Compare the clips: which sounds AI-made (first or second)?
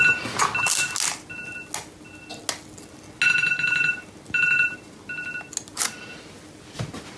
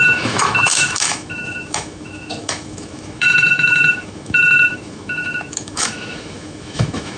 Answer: second